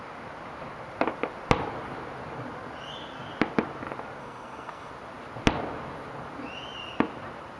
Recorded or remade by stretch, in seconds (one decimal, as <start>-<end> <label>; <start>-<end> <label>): 0.0-4.2 recorded; 4.2-4.9 remade; 4.9-7.6 recorded